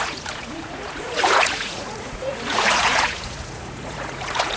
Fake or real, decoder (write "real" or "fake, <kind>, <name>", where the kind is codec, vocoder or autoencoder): fake, vocoder, Vocos